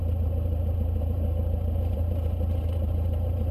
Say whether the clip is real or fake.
fake